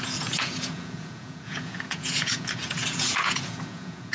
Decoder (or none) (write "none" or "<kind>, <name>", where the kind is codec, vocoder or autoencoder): vocoder, Vocos